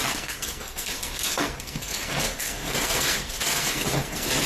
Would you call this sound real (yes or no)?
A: no